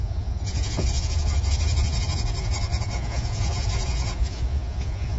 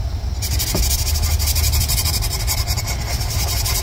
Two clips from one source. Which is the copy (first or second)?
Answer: first